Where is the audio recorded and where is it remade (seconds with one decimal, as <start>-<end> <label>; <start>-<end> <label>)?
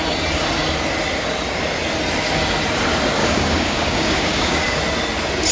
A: 0.0-3.2 recorded; 3.2-4.8 remade; 4.8-5.5 recorded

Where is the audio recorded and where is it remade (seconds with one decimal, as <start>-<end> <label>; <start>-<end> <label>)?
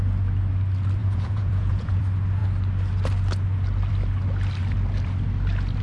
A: 0.0-1.0 recorded; 1.0-2.0 remade; 2.0-5.8 recorded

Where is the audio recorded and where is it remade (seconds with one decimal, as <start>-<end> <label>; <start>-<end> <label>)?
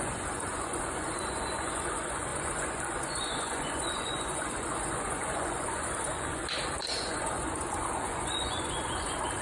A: 0.0-6.4 remade; 6.4-7.0 recorded; 7.0-9.4 remade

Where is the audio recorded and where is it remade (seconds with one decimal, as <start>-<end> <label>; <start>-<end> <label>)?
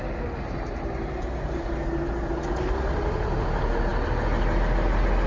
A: 0.0-5.3 recorded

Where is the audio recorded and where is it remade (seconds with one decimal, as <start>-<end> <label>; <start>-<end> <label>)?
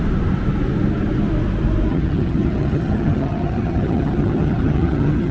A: 0.0-1.9 recorded; 1.9-5.3 remade